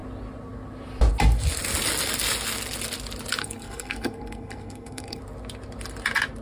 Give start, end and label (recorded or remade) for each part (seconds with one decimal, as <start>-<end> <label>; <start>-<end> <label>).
0.0-3.4 recorded; 3.4-5.2 remade; 5.2-6.4 recorded